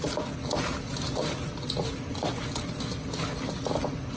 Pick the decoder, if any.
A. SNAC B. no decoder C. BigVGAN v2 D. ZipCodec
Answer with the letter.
B